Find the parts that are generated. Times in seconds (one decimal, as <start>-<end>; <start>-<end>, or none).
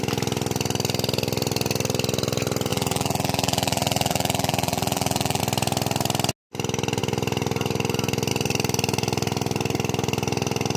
2.7-5.4